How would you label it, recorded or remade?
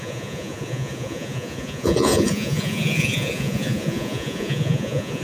remade